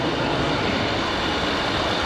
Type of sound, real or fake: real